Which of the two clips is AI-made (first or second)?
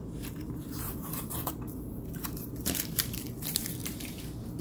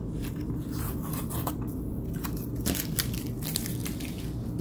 first